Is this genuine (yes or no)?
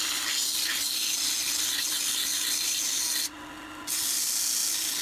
yes